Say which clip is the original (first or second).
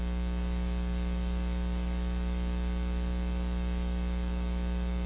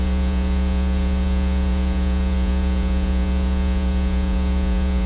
first